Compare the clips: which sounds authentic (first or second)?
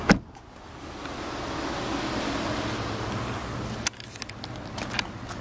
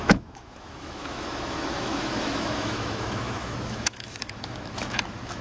first